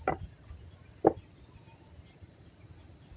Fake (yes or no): no